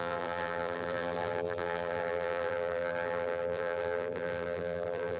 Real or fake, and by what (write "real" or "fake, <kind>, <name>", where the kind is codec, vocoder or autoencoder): fake, vocoder, BigVGAN v2